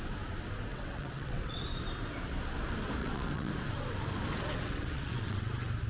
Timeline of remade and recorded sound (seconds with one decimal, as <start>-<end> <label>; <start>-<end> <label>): 0.0-0.7 recorded; 0.7-1.6 remade; 1.6-3.0 recorded; 3.0-3.5 remade; 3.5-4.5 recorded; 4.5-5.5 remade; 5.5-5.9 recorded